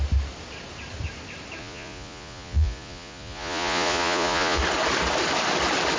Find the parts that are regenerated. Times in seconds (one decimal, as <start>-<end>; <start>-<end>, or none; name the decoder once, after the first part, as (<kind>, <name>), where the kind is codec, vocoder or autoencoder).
1.6-4.6 (vocoder, Vocos)